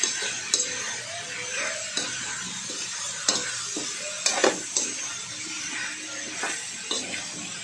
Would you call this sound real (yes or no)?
yes